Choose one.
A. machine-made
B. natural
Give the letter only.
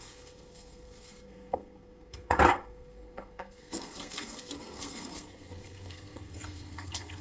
A